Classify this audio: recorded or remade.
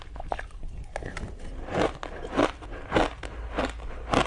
recorded